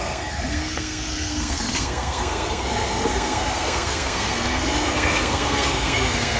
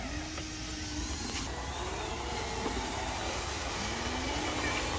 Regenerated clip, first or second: first